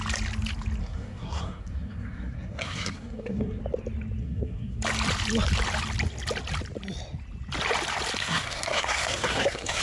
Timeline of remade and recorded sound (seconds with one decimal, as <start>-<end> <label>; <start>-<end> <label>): 0.0-0.8 recorded; 0.8-3.6 remade; 3.6-4.2 recorded; 4.2-4.8 remade; 4.8-8.2 recorded; 8.2-9.8 remade